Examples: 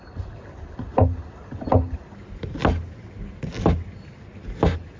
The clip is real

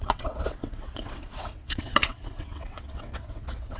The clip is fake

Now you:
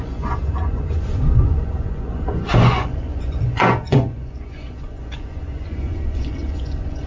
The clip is fake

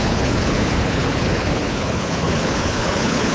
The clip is fake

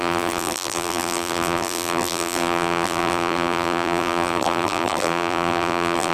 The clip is fake